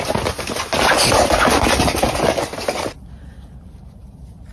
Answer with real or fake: real